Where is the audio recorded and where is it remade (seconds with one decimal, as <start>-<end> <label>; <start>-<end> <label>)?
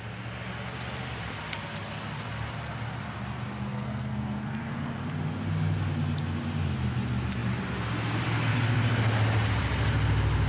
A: 0.0-3.7 recorded; 3.7-4.6 remade; 4.6-10.5 recorded